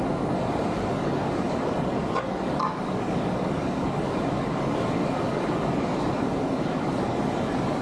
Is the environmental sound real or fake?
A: fake